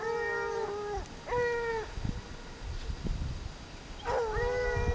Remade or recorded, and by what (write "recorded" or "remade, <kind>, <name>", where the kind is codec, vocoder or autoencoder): recorded